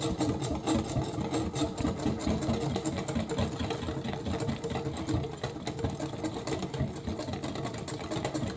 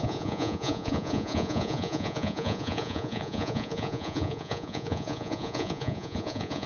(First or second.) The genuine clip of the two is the first